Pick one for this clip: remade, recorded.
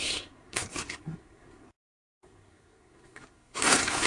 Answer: remade